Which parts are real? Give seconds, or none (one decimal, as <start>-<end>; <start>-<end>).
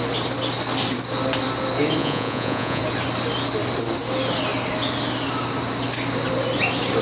0.0-2.0; 2.8-7.0